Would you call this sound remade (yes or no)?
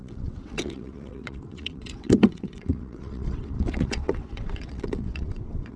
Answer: yes